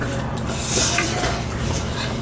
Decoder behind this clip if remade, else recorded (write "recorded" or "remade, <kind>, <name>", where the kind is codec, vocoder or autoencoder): remade, vocoder, BigVGAN v2